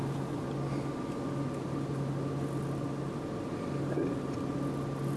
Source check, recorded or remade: recorded